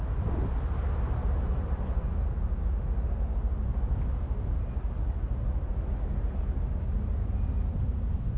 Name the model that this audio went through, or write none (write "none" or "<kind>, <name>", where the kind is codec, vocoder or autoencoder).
none